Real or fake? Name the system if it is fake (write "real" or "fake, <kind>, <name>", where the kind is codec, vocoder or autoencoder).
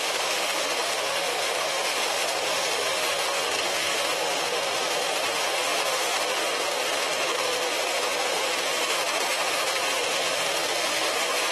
fake, autoencoder, DAC-VAE